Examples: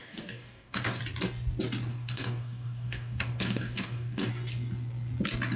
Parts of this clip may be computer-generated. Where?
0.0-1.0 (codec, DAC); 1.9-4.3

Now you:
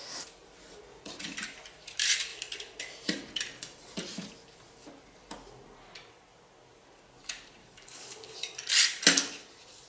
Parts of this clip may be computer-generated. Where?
7.6-8.3 (codec, DAC)

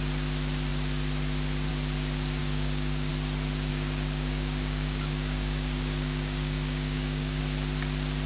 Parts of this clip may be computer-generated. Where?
2.4-3.1 (codec, DAC); 3.7-7.4

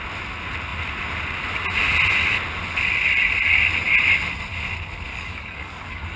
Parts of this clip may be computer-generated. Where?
5.1-6.2 (codec, DAC)

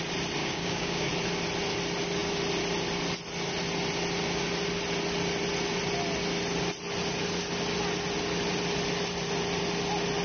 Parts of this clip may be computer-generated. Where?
0.4-1.1 (codec, DAC)